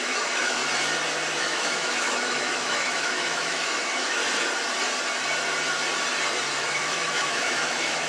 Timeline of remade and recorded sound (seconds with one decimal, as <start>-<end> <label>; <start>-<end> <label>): 0.0-0.6 remade; 0.6-1.4 recorded; 1.4-4.2 remade; 4.2-6.5 recorded; 6.5-8.1 remade